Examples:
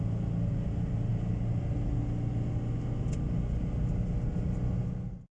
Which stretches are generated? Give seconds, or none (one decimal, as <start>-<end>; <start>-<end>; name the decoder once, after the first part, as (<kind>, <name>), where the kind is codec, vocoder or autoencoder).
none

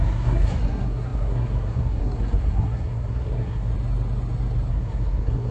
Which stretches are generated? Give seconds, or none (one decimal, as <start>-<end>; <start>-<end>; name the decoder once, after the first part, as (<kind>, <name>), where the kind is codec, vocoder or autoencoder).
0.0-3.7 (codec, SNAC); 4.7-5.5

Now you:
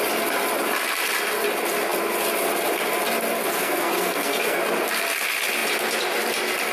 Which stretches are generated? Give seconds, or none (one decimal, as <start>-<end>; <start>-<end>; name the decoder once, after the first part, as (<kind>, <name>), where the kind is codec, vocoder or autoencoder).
3.5-4.6 (codec, SNAC)

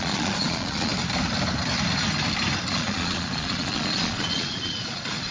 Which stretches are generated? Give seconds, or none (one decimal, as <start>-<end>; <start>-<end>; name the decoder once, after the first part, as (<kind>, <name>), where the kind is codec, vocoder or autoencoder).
0.0-0.9 (vocoder, Vocos); 2.7-5.3

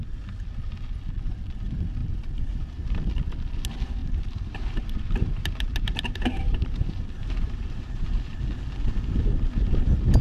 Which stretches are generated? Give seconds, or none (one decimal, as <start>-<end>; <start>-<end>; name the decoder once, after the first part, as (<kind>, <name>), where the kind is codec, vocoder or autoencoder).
2.0-2.8 (vocoder, BigVGAN v2); 4.0-8.4